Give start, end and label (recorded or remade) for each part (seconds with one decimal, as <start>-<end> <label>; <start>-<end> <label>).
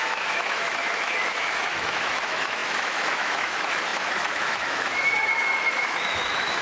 0.0-6.6 remade